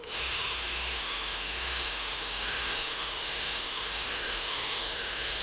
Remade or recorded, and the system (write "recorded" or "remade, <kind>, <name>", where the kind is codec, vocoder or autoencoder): remade, autoencoder, DAC-VAE